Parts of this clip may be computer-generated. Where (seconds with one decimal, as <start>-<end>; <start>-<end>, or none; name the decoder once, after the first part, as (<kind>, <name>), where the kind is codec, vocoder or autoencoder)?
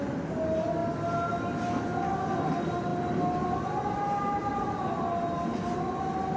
none